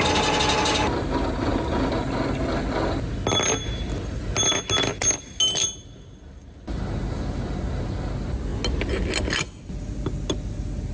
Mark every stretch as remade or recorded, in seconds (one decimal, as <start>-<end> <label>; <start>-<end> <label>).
0.0-10.9 recorded